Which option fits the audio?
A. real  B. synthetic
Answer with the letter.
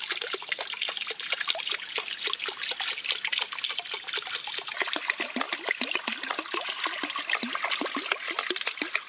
A